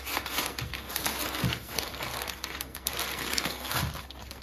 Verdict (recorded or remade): remade